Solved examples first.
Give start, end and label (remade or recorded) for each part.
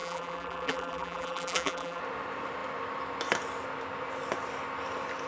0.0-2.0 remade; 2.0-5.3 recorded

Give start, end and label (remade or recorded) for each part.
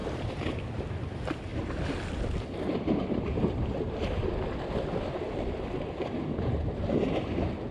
0.0-0.9 remade; 0.9-1.5 recorded; 1.5-5.7 remade; 5.7-7.7 recorded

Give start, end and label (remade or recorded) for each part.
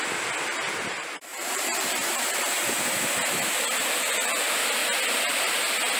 0.0-1.3 recorded; 1.3-2.7 remade; 2.7-6.0 recorded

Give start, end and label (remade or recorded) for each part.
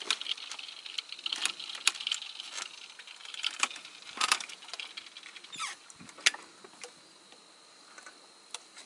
0.0-3.2 recorded; 3.2-4.7 remade; 4.7-8.9 recorded